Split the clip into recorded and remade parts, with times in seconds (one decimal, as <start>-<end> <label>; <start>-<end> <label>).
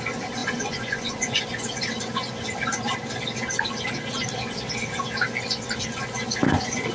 0.0-0.4 recorded; 0.4-1.4 remade; 1.4-6.9 recorded